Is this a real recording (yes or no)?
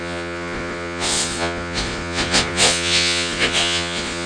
no